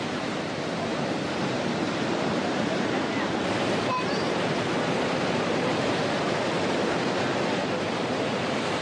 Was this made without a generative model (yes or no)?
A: no